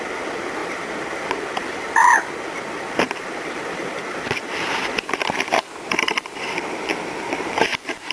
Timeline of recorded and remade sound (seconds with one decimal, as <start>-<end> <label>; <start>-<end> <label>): 0.0-2.0 remade; 2.0-2.9 recorded; 2.9-4.8 remade; 4.8-5.9 recorded; 5.9-8.1 remade